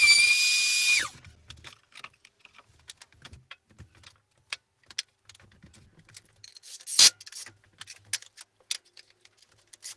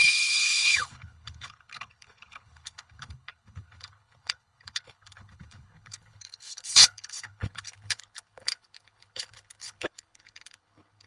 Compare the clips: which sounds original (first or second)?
first